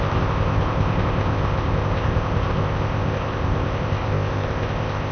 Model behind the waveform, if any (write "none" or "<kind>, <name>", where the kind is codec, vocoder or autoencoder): codec, ZipCodec